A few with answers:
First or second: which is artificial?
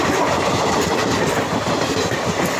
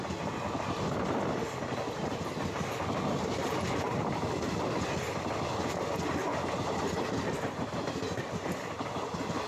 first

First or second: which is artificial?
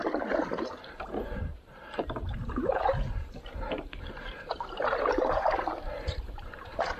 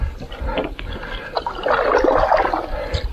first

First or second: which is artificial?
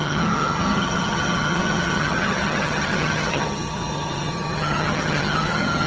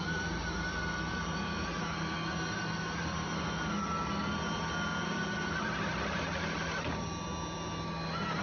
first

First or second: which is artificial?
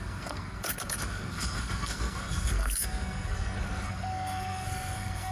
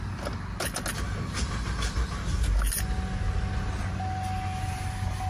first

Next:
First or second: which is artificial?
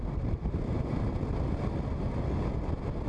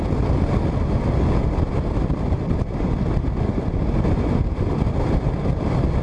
second